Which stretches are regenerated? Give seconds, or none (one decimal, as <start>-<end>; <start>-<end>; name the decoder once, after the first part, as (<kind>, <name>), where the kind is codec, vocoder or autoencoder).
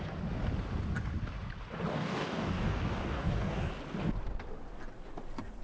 1.9-3.7 (codec, DAC)